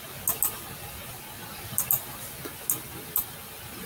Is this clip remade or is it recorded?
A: recorded